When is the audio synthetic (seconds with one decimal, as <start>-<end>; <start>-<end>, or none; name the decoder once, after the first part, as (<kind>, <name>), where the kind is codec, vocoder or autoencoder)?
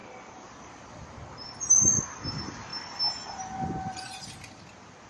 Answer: none